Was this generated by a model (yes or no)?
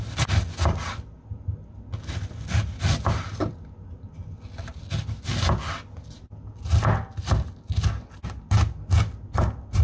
no